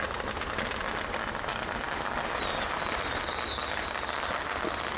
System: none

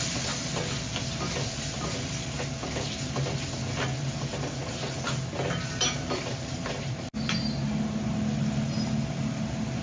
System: none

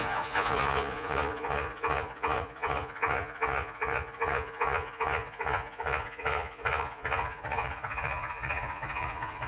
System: vocoder, Vocos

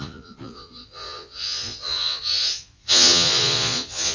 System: vocoder, Vocos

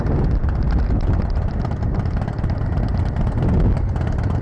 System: none